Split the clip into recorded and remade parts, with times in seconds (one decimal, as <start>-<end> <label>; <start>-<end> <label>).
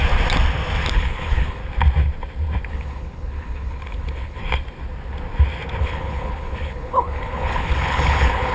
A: 0.0-0.9 recorded; 0.9-1.6 remade; 1.6-2.7 recorded; 2.7-4.4 remade; 4.4-5.8 recorded; 5.8-8.5 remade